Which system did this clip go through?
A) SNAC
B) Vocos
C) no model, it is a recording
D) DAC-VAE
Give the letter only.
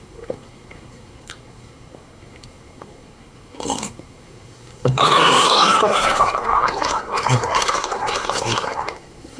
A